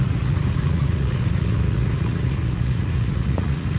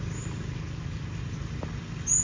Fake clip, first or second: first